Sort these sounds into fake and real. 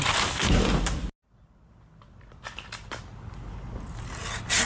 real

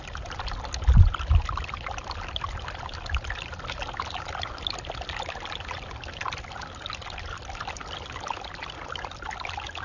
real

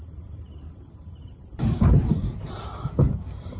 fake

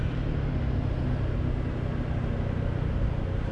real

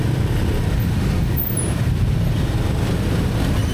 real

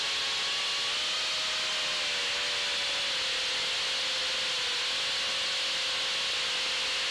real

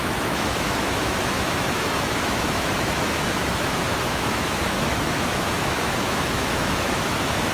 fake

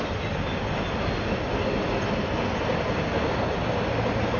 real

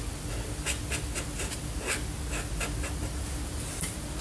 real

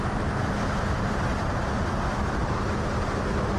real